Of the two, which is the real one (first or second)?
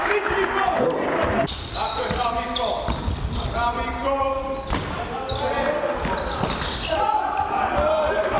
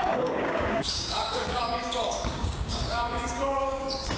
first